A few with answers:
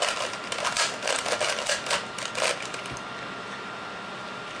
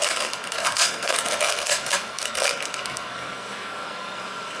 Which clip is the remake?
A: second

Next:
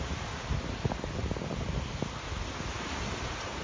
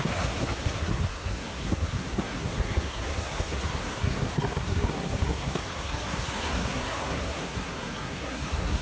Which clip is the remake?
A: second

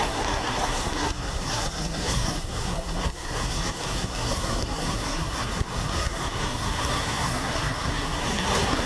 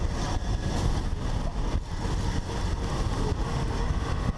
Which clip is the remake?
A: first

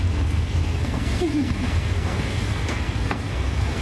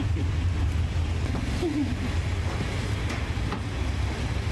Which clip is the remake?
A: first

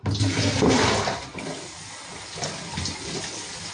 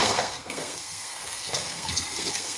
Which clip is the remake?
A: second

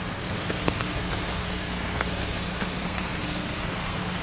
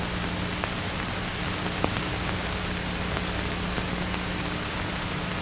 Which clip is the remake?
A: first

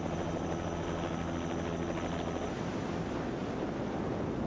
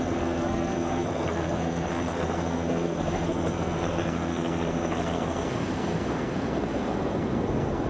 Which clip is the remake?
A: second